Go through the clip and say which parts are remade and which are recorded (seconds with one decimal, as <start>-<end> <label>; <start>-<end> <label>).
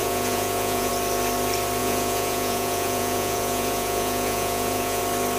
0.0-0.9 remade; 0.9-1.8 recorded; 1.8-5.0 remade; 5.0-5.4 recorded